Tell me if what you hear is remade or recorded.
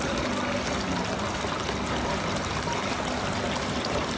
recorded